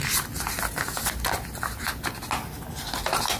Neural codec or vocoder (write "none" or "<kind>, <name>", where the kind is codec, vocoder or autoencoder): none